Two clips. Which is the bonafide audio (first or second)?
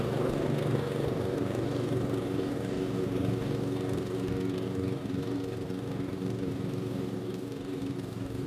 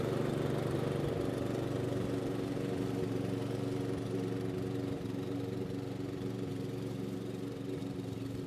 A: second